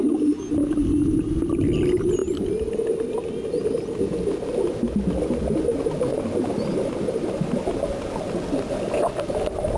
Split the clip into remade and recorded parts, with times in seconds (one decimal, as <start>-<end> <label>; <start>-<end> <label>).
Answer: 0.0-9.8 recorded